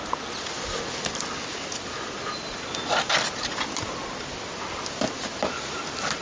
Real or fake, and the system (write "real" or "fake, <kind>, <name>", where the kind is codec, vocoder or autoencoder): real